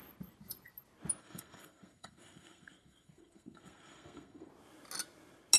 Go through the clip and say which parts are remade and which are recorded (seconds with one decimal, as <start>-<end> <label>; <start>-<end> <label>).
0.0-1.2 recorded; 1.2-4.5 remade; 4.5-5.6 recorded